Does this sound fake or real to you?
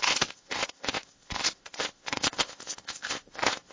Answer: fake